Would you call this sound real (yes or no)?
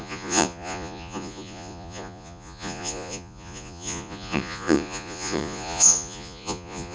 no